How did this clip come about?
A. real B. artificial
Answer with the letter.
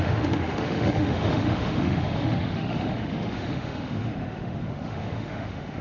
B